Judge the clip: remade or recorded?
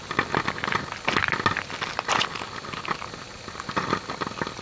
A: recorded